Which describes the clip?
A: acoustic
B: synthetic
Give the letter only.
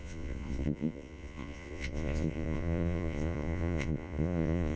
B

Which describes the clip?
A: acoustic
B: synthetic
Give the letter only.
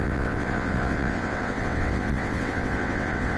B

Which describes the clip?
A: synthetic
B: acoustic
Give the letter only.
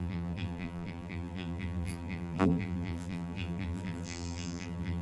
A